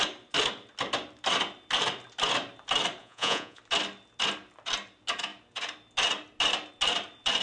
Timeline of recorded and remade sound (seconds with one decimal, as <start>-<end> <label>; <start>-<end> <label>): 0.0-3.0 recorded; 3.0-3.6 remade; 3.6-7.4 recorded

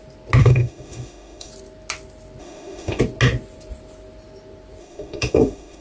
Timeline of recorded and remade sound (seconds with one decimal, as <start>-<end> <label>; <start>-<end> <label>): 0.0-0.4 recorded; 0.4-1.5 remade; 1.5-2.4 recorded; 2.4-3.0 remade; 3.0-4.8 recorded; 4.8-5.8 remade

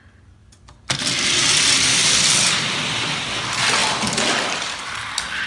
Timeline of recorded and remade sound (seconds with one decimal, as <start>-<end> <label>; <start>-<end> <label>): 0.0-0.4 recorded; 0.4-3.2 remade; 3.2-5.5 recorded

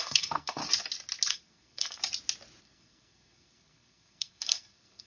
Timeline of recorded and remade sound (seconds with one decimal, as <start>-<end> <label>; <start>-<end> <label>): 0.0-0.6 remade; 0.6-1.3 recorded; 1.3-2.0 remade; 2.0-2.6 recorded; 2.6-5.1 remade

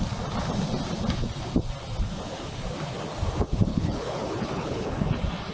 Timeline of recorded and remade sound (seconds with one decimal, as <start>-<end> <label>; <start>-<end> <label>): 0.0-3.7 recorded; 3.7-5.0 remade; 5.0-5.5 recorded